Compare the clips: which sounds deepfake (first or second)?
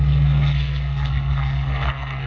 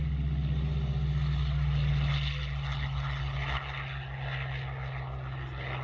first